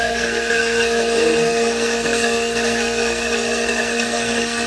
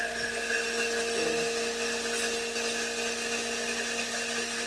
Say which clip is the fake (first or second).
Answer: first